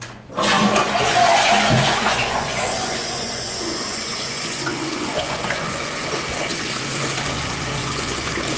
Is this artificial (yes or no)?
yes